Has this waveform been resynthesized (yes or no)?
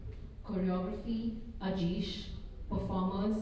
no